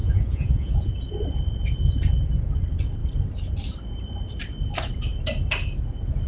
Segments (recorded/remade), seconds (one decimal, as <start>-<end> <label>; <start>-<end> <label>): 0.0-0.9 remade; 0.9-6.3 recorded